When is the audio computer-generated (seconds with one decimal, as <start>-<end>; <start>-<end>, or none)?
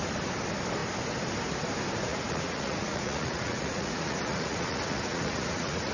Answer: 2.1-5.9